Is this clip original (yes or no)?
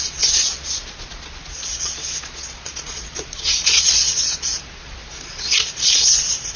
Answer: no